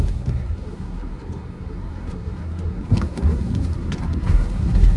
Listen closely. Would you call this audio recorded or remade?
remade